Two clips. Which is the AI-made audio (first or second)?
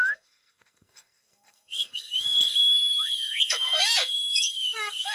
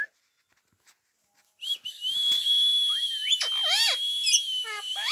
first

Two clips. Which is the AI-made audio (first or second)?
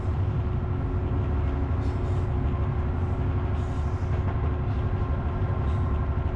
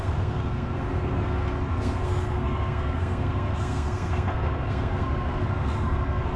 second